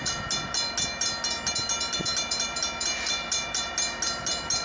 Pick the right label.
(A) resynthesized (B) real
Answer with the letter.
B